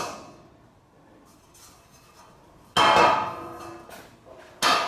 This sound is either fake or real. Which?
real